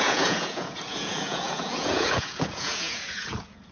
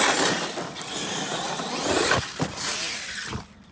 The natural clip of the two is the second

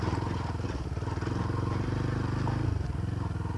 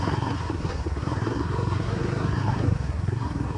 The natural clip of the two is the first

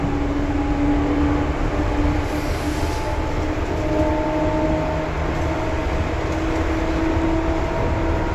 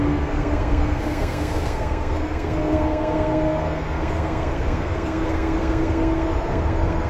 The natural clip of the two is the first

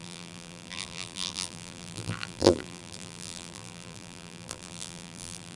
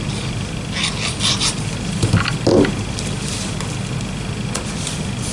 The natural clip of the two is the second